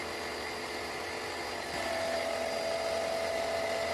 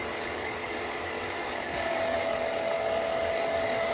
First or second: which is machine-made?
second